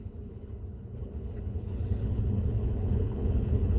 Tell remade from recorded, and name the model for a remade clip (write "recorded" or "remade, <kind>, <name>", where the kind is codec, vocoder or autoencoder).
remade, codec, HILCodec